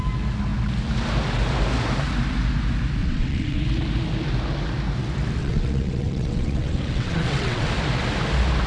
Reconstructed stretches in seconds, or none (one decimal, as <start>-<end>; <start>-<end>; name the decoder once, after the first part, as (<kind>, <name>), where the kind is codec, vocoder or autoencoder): 3.0-3.6 (vocoder, WaveNeXt); 5.4-7.7

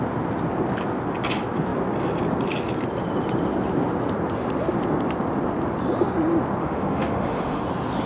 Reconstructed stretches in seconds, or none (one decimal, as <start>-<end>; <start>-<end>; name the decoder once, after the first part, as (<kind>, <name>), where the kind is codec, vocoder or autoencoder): 6.6-7.6 (autoencoder, DAC-VAE)

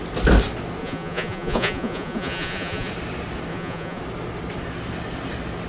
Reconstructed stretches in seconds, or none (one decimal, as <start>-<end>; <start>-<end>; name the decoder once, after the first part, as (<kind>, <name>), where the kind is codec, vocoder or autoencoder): 0.8-2.9 (vocoder, Vocos); 3.5-4.0

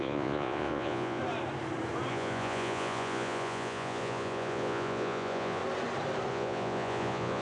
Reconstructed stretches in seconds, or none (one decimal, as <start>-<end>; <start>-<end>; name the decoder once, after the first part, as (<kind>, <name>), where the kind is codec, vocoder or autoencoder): 0.0-1.2 (vocoder, Vocos); 2.1-5.6; 6.3-7.4

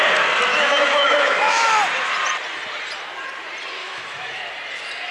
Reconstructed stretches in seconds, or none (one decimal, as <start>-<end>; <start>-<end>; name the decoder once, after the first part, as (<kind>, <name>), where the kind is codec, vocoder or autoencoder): 0.5-1.7 (autoencoder, DAC-VAE); 3.8-4.4